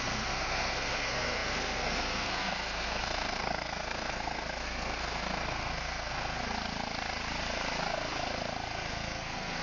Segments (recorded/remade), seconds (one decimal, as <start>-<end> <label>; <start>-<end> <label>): 0.0-6.4 remade; 6.4-8.9 recorded; 8.9-9.6 remade